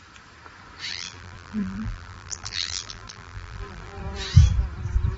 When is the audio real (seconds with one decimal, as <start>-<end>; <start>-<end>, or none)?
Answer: 0.0-0.9; 4.0-5.2